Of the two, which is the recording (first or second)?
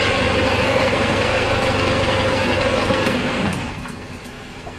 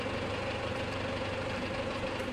second